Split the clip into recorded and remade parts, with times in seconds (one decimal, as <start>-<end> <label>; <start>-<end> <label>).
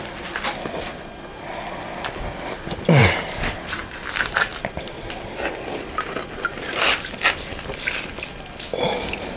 0.0-9.4 recorded